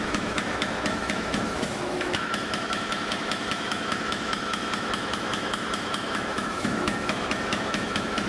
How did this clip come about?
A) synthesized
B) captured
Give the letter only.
A